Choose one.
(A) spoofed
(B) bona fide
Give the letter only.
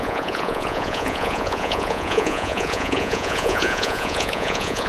A